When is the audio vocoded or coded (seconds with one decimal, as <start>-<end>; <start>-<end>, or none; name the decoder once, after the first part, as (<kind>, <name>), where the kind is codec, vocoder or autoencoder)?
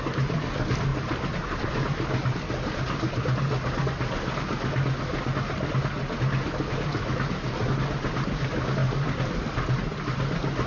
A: 6.9-7.5 (autoencoder, DAC-VAE)